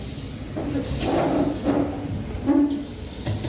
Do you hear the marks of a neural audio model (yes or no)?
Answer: no